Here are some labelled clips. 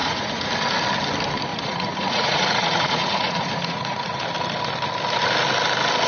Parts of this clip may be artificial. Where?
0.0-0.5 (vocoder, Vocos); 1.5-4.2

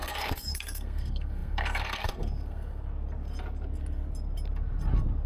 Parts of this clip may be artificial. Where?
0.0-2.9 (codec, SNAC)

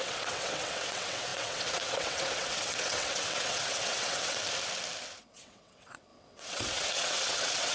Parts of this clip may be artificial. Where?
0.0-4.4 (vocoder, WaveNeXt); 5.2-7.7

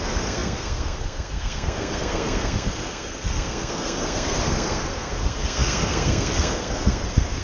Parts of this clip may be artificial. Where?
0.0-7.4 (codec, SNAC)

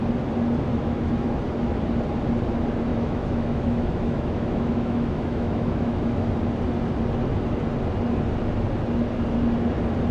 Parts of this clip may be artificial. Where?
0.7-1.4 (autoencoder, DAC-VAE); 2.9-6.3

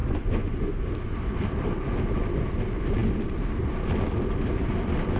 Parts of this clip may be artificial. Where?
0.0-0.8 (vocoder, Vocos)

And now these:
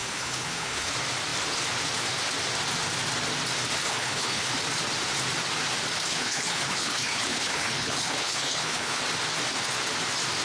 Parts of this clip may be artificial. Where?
0.0-0.9 (codec, HILCodec); 3.8-4.5; 6.1-9.0